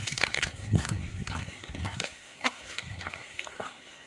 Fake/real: fake